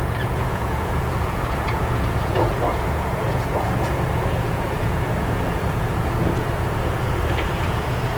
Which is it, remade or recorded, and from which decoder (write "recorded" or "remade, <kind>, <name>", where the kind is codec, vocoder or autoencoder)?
remade, vocoder, Vocos